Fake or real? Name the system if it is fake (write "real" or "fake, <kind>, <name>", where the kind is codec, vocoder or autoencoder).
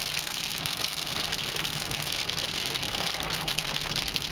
fake, codec, SNAC